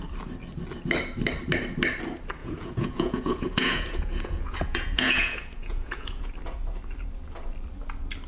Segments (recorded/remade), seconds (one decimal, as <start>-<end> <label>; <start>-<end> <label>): 0.0-2.4 recorded; 2.4-6.3 remade; 6.3-8.3 recorded